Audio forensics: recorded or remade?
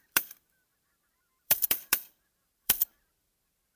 remade